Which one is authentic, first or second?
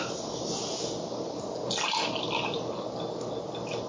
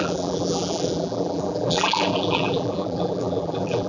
first